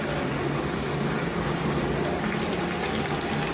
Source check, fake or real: real